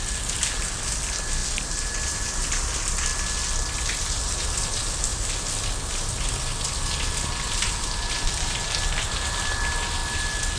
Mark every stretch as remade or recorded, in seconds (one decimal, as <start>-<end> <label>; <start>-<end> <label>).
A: 0.0-10.6 recorded